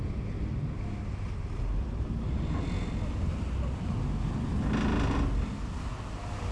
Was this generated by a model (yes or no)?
no